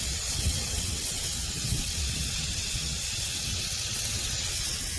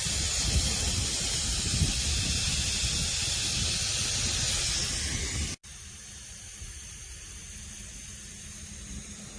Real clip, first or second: second